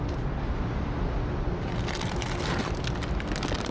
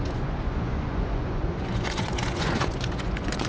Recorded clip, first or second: first